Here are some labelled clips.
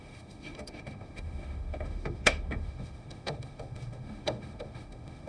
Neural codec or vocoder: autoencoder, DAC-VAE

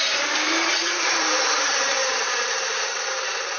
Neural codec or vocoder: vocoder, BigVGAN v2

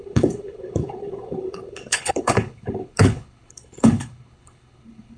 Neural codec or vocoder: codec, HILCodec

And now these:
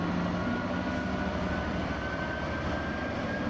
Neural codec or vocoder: none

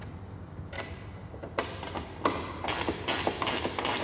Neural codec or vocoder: none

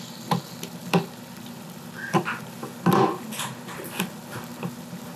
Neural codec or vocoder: none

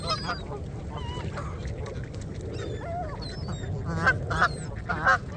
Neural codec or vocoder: none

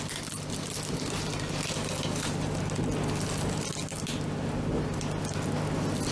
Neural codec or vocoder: none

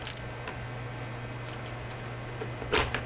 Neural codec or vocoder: none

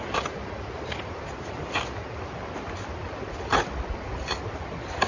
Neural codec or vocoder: none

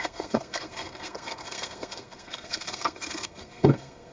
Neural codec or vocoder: codec, SNAC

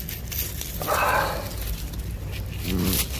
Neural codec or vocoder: none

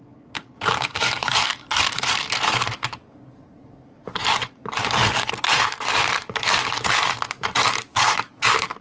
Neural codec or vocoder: codec, DAC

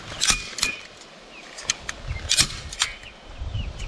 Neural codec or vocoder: none